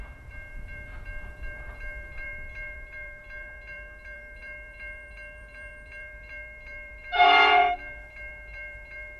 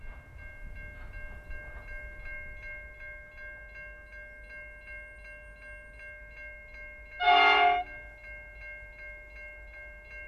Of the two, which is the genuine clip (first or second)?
second